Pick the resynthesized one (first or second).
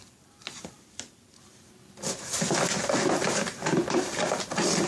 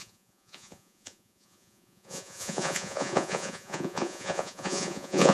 second